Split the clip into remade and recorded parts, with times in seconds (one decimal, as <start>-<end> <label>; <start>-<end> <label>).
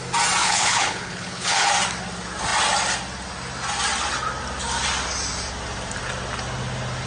0.0-0.4 recorded; 0.4-1.7 remade; 1.7-7.1 recorded